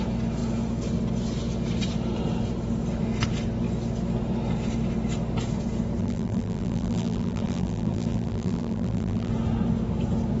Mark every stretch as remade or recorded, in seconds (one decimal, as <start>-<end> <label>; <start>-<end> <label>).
0.0-6.0 recorded; 6.0-9.3 remade; 9.3-10.4 recorded